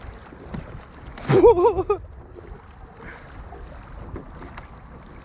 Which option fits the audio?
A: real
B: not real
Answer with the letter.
A